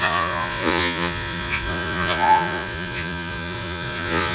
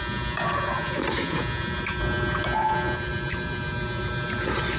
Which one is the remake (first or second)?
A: first